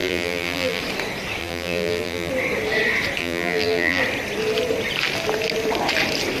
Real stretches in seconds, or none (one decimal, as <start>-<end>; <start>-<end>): 0.8-1.4; 2.3-3.2; 4.0-6.4